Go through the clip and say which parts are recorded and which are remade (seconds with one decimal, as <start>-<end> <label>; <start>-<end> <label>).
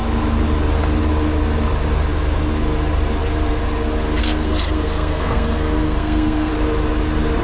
0.0-4.2 recorded; 4.2-6.5 remade; 6.5-7.4 recorded